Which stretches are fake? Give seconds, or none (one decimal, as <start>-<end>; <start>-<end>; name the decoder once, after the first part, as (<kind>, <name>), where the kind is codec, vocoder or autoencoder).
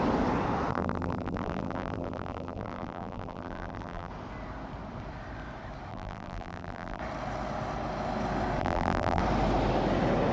0.7-4.1 (vocoder, BigVGAN v2); 5.9-7.0; 8.6-9.2